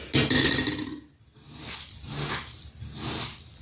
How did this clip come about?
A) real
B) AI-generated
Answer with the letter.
A